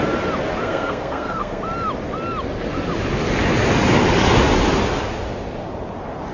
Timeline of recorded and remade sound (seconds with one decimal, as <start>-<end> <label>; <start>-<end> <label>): 0.0-0.6 recorded; 0.6-1.6 remade; 1.6-6.3 recorded